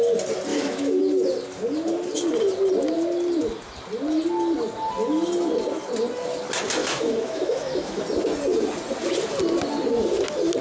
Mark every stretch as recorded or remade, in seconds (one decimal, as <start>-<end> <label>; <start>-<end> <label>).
0.0-0.5 recorded; 0.5-1.0 remade; 1.0-6.8 recorded; 6.8-8.0 remade; 8.0-10.6 recorded